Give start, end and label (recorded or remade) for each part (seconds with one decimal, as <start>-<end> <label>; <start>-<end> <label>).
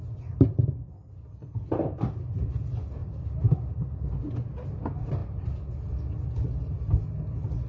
0.0-7.7 recorded